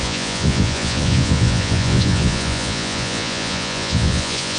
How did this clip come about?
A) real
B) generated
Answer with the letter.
B